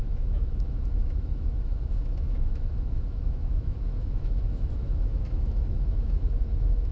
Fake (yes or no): yes